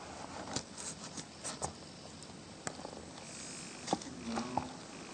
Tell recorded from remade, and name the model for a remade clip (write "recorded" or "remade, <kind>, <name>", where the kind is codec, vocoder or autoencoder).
recorded